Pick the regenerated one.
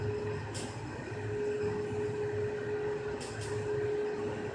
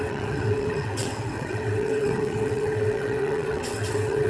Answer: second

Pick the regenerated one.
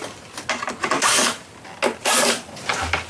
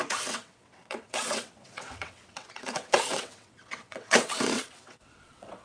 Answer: second